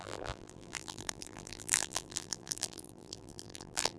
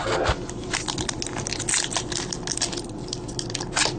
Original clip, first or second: second